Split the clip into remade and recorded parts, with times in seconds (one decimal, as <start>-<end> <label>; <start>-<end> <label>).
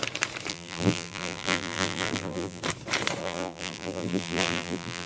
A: 0.0-0.5 recorded; 0.5-2.6 remade; 2.6-3.2 recorded; 3.2-5.1 remade